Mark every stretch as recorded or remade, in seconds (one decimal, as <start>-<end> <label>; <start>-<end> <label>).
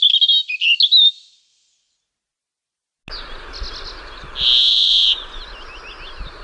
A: 0.0-4.6 recorded; 4.6-5.4 remade; 5.4-6.4 recorded